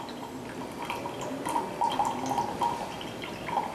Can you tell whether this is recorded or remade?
recorded